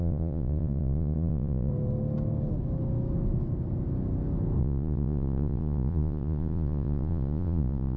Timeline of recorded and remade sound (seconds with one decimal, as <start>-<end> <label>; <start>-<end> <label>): 0.0-1.7 remade; 1.7-4.6 recorded; 4.6-8.0 remade